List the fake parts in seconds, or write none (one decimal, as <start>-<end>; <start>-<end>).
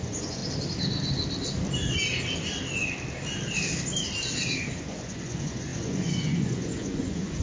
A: 0.0-0.4; 4.7-7.4